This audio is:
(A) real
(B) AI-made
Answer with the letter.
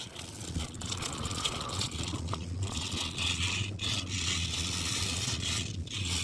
B